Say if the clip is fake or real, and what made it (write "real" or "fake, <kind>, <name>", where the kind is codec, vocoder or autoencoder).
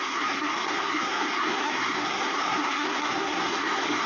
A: fake, codec, SNAC